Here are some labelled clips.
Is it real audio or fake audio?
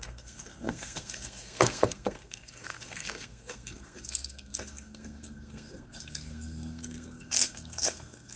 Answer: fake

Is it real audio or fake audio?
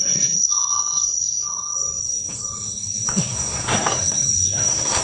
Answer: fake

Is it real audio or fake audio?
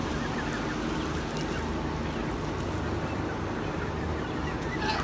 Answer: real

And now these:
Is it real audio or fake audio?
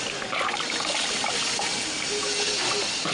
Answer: real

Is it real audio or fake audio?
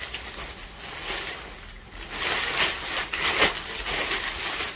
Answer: real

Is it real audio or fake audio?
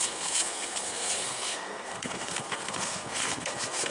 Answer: fake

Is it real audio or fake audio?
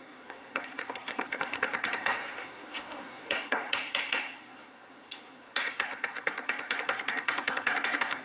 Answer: fake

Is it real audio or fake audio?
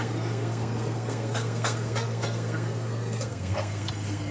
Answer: fake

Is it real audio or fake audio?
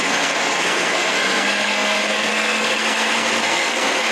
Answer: fake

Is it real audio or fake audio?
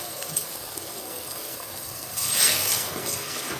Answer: fake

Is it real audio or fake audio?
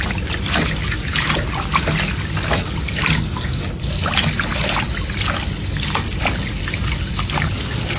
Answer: real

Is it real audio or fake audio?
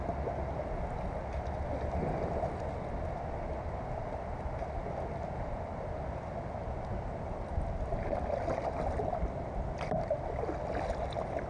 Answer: real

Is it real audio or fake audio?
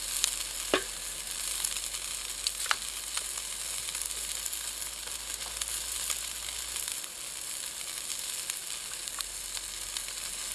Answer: real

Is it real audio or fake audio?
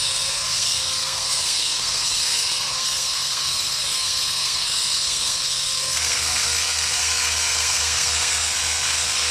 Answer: fake